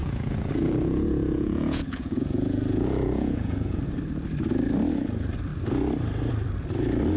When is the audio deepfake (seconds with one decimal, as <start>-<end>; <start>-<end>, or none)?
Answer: 0.0-3.8